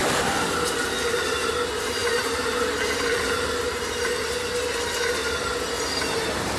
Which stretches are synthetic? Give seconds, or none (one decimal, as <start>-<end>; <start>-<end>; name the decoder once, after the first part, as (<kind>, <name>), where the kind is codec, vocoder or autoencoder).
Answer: none